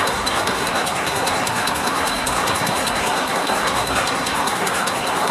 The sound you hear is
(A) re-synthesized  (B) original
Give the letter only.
A